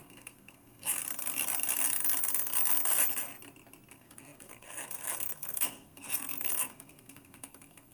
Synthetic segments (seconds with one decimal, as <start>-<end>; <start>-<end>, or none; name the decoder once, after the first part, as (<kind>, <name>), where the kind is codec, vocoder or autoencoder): 0.0-1.0 (codec, SNAC); 3.9-7.9